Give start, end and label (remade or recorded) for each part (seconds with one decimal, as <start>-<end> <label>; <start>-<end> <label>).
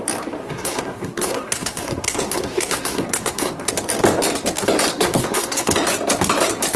0.0-0.4 recorded; 0.4-3.7 remade; 3.7-4.9 recorded; 4.9-5.7 remade; 5.7-6.8 recorded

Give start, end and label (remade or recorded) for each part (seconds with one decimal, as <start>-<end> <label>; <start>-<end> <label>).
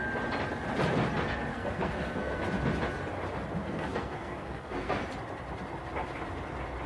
0.0-1.5 recorded; 1.5-2.4 remade; 2.4-3.6 recorded; 3.6-5.0 remade; 5.0-6.9 recorded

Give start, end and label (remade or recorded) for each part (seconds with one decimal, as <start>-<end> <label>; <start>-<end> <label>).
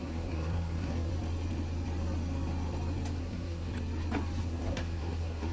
0.0-1.1 remade; 1.1-3.2 recorded; 3.2-3.7 remade; 3.7-4.4 recorded; 4.4-5.5 remade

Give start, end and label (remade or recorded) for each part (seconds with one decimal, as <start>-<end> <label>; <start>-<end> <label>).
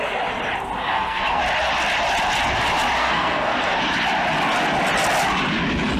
0.0-0.8 recorded; 0.8-1.4 remade; 1.4-3.0 recorded; 3.0-3.8 remade; 3.8-6.0 recorded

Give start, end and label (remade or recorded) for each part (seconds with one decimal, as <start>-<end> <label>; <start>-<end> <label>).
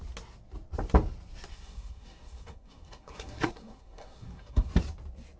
0.0-1.5 recorded; 1.5-4.7 remade; 4.7-5.4 recorded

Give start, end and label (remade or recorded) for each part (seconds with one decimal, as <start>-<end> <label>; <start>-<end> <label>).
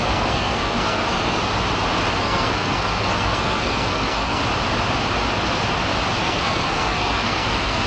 0.0-1.4 remade; 1.4-2.2 recorded; 2.2-4.4 remade; 4.4-6.2 recorded; 6.2-7.9 remade